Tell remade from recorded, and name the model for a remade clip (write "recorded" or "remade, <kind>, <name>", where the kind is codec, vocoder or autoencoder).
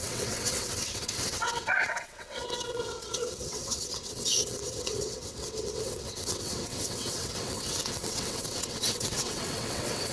remade, vocoder, WaveNeXt